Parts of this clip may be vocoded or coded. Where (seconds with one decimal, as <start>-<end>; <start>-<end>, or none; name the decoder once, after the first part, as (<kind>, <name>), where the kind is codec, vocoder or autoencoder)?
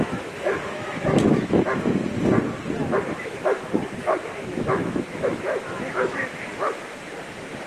0.0-2.0 (autoencoder, DAC-VAE); 3.2-7.7